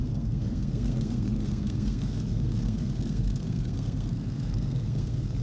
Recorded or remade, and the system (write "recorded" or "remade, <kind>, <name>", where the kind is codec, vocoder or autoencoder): remade, codec, SNAC